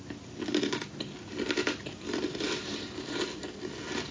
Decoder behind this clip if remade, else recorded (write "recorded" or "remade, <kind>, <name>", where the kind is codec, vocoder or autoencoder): recorded